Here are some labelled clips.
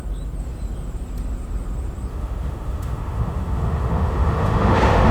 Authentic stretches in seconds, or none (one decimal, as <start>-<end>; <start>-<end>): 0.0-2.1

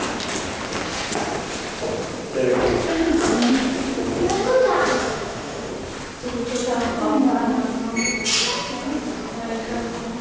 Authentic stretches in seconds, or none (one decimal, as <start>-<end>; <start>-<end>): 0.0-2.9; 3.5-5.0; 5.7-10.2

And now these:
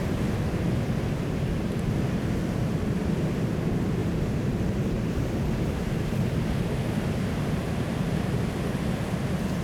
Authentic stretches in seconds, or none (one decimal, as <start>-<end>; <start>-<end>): 0.0-4.0; 6.9-9.6

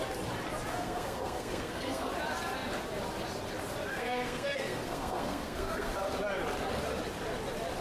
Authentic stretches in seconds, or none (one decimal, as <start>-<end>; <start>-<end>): 0.0-0.7; 2.1-3.9; 5.9-7.8

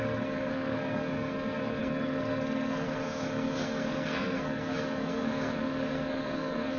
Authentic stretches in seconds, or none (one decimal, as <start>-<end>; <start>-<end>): none

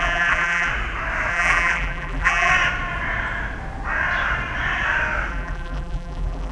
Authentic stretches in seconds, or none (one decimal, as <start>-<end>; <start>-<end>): 0.7-1.3; 2.5-5.3

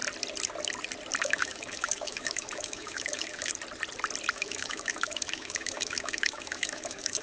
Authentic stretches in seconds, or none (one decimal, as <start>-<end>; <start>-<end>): 0.0-1.2; 3.5-4.3